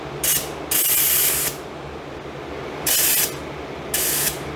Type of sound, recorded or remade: recorded